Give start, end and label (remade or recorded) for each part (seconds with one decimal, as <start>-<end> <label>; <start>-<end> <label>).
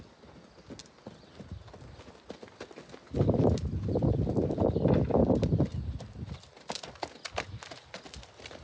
0.0-8.6 recorded